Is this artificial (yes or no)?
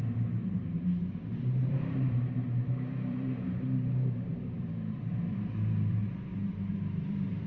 yes